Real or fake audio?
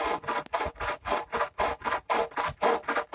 real